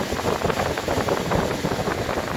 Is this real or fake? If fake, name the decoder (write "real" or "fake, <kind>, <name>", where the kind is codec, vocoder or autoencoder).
real